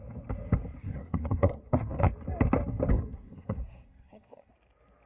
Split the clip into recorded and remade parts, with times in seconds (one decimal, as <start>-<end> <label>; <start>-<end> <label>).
0.0-0.8 recorded; 0.8-2.1 remade; 2.1-2.9 recorded; 2.9-4.5 remade; 4.5-5.1 recorded